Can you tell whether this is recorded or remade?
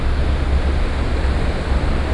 recorded